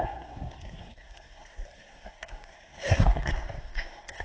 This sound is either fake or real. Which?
fake